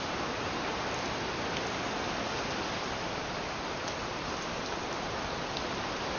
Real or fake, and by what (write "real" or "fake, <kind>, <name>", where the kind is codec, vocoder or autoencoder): real